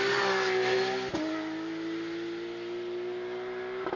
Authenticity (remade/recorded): recorded